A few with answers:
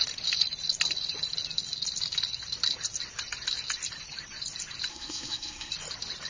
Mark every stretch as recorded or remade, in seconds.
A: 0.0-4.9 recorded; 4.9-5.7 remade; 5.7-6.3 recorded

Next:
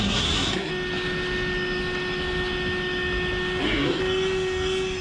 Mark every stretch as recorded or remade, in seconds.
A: 0.0-0.7 remade; 0.7-3.6 recorded; 3.6-4.0 remade; 4.0-5.0 recorded

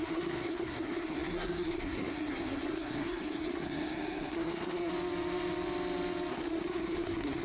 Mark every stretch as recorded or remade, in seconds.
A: 0.0-4.9 remade; 4.9-6.3 recorded; 6.3-7.4 remade

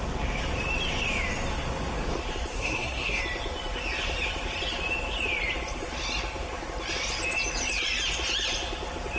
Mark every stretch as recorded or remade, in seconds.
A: 0.0-2.5 recorded; 2.5-3.2 remade; 3.2-9.2 recorded